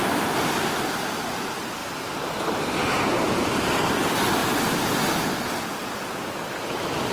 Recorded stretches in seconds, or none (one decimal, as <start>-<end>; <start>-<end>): 0.0-4.4; 5.6-7.1

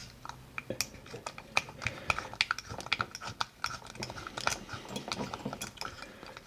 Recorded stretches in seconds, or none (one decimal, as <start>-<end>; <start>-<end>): 0.0-6.5

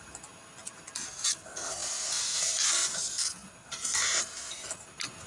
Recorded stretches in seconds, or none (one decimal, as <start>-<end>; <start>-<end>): 0.0-5.3

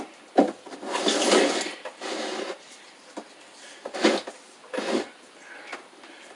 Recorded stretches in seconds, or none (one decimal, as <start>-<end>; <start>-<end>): 0.0-5.7

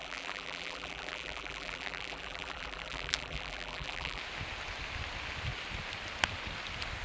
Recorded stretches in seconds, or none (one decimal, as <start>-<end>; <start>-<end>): 4.2-7.0

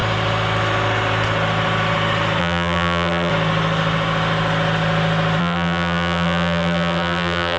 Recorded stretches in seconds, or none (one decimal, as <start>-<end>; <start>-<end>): 0.0-2.4; 3.3-5.4

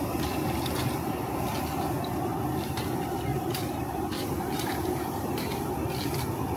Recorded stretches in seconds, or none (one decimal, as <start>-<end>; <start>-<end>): 0.0-3.3; 5.7-6.6